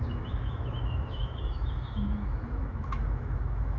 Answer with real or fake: fake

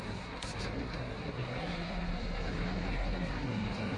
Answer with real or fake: fake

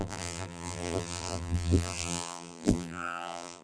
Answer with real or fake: fake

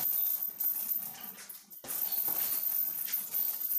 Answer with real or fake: real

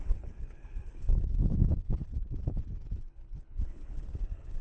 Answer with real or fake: fake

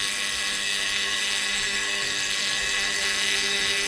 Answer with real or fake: fake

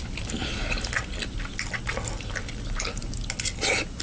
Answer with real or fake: real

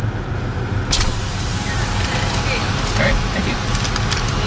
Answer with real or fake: real